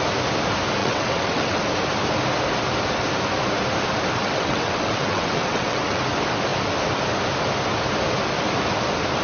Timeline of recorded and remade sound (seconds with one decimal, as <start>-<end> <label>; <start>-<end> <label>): 0.0-0.8 recorded; 0.8-1.6 remade; 1.6-4.2 recorded; 4.2-6.0 remade; 6.0-9.2 recorded